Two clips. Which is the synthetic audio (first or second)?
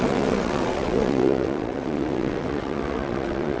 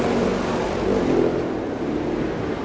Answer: first